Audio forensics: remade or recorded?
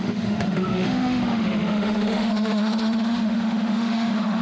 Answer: remade